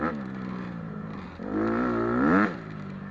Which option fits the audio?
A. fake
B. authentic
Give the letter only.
B